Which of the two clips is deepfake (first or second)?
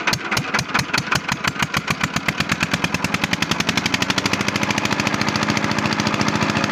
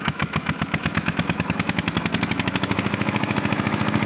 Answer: second